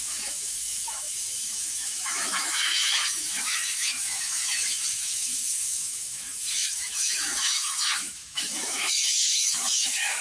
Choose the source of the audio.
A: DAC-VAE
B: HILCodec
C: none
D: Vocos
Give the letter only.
A